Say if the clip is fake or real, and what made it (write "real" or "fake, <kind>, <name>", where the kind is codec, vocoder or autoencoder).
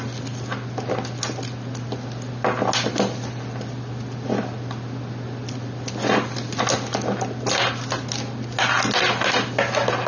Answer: real